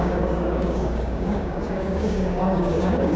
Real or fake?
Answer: fake